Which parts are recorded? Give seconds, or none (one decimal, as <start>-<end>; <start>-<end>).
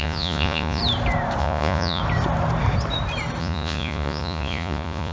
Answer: 0.8-1.4; 2.0-3.4